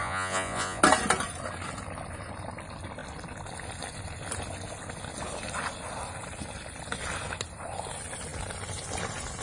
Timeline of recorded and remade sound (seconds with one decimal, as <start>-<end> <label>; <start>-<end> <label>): 0.0-0.8 remade; 0.8-9.4 recorded